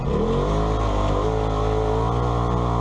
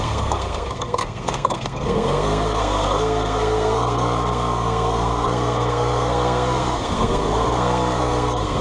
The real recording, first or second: first